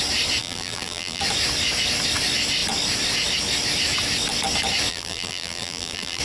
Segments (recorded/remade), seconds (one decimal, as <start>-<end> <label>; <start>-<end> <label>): 0.0-0.4 recorded; 0.4-1.2 remade; 1.2-4.9 recorded; 4.9-6.2 remade